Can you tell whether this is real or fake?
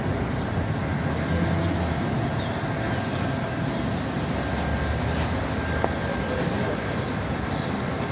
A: real